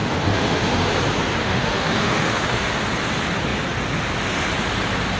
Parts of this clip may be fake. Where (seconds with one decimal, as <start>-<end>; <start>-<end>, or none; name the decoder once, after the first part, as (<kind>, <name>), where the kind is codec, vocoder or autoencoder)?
0.0-0.9 (autoencoder, DAC-VAE); 1.4-2.7